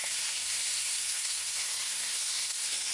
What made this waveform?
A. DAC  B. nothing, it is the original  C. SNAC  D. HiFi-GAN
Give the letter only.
C